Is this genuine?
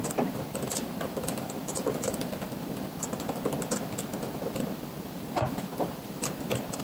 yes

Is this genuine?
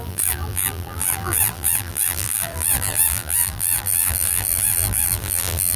no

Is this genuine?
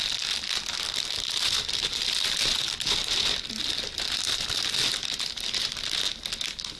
yes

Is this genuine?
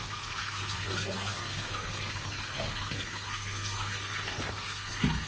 no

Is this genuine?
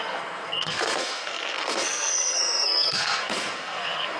no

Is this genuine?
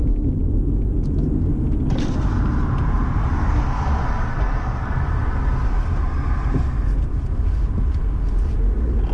yes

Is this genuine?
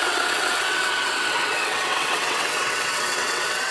no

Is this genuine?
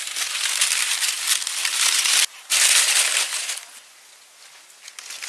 yes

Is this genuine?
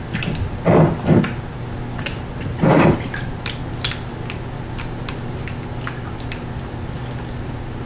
yes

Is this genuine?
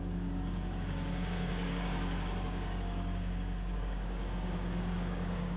no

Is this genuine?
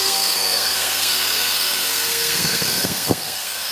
no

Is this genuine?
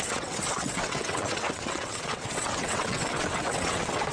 no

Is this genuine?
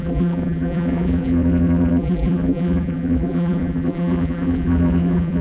no